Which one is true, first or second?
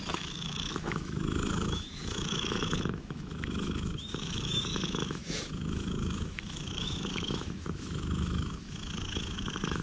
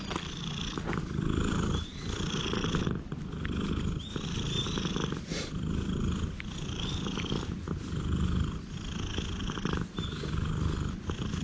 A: second